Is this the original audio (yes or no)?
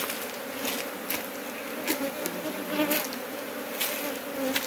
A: yes